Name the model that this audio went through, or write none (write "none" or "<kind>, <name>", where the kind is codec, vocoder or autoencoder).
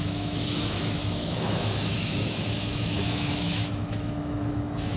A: autoencoder, DAC-VAE